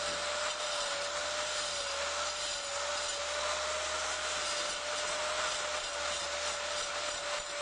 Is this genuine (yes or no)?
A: yes